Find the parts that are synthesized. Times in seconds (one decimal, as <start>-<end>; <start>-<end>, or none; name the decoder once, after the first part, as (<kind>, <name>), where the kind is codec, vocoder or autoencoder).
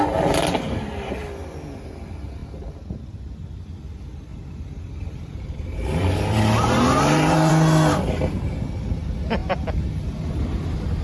1.4-2.0 (vocoder, BigVGAN v2); 4.3-7.5